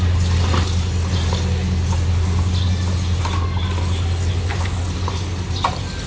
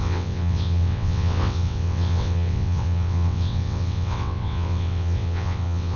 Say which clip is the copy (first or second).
second